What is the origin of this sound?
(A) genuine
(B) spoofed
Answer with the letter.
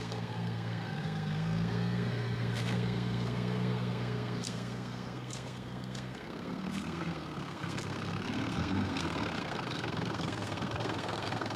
B